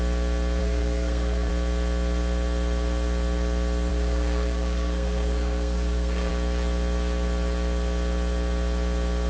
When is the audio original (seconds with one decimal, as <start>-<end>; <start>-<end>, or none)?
0.0-0.6; 1.5-3.9; 6.3-9.3